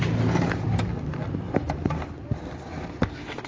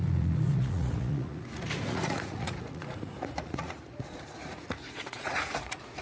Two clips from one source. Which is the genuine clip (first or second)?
first